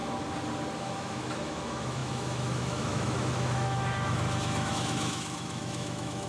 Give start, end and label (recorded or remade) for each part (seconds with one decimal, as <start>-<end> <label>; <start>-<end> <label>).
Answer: 0.0-0.8 recorded; 0.8-6.3 remade